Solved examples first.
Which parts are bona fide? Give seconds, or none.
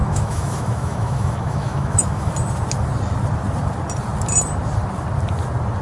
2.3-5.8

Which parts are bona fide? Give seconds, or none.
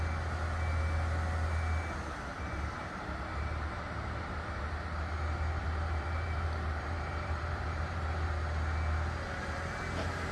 0.0-2.3; 4.7-5.6; 8.3-10.3